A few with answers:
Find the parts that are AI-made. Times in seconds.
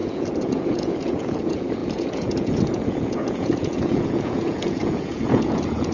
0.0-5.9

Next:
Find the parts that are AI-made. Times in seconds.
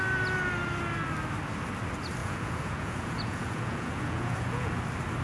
2.2-4.7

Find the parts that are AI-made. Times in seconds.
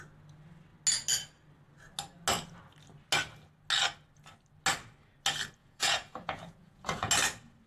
5.6-7.1